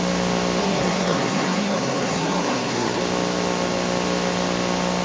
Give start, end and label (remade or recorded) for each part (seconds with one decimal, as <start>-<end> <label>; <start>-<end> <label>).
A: 0.0-0.6 recorded; 0.6-3.0 remade; 3.0-5.0 recorded